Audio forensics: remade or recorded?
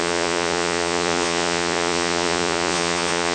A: remade